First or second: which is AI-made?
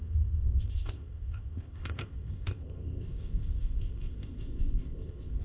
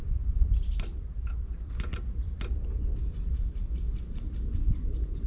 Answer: first